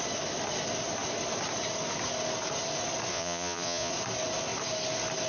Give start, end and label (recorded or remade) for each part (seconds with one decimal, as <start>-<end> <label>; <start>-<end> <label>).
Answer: 0.0-3.1 recorded; 3.1-3.9 remade; 3.9-5.3 recorded